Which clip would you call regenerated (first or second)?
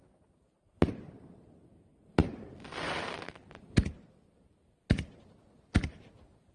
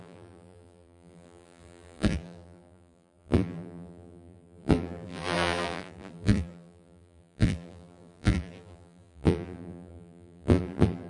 second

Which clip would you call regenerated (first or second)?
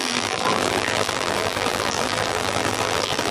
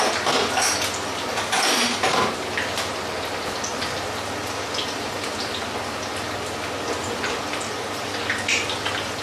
first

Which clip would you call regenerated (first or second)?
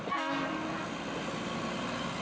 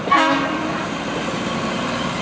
second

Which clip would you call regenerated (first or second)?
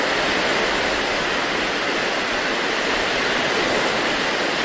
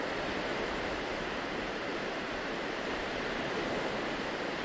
second